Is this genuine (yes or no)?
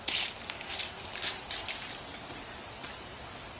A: yes